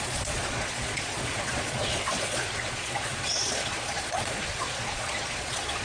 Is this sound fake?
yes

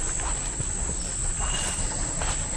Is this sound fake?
no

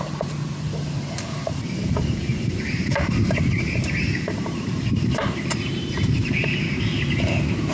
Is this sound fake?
yes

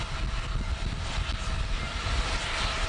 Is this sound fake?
no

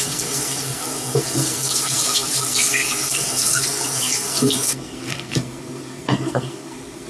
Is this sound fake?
yes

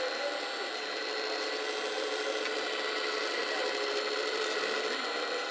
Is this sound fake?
no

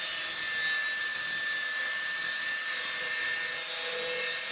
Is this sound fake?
no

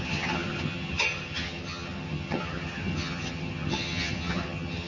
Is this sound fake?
yes